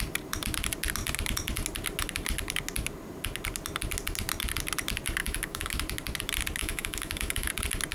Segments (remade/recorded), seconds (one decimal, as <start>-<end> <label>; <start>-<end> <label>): 0.0-5.2 recorded; 5.2-5.8 remade; 5.8-6.6 recorded; 6.6-7.5 remade; 7.5-7.9 recorded